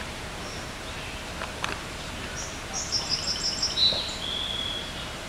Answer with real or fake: fake